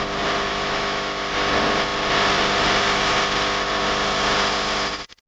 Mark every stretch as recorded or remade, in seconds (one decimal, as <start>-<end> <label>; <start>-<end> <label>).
0.0-0.5 recorded; 0.5-1.2 remade; 1.2-5.3 recorded